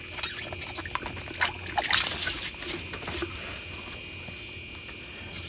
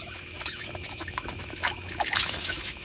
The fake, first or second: second